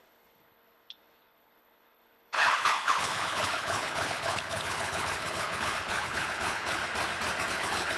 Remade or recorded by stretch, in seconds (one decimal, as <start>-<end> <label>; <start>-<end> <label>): 0.0-6.8 remade; 6.8-7.5 recorded; 7.5-8.0 remade